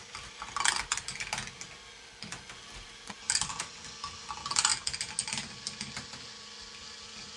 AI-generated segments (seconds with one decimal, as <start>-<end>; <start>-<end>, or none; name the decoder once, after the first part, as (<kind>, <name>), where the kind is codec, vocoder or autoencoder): none